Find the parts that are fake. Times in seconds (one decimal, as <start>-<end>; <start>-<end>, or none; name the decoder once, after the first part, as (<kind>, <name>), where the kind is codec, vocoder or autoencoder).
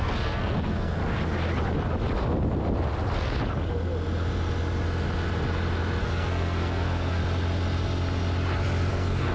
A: 0.0-1.0 (codec, SNAC); 6.0-7.2; 8.9-9.3